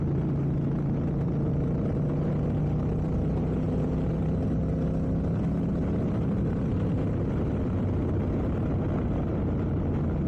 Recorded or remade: recorded